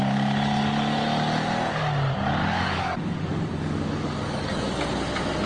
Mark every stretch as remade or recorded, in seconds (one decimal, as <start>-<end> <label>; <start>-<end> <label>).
0.0-2.4 recorded; 2.4-4.8 remade; 4.8-5.5 recorded